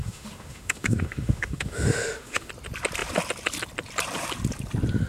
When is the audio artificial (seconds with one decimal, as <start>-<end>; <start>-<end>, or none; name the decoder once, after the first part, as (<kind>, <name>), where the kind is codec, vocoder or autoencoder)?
0.0-2.5 (autoencoder, DAC-VAE)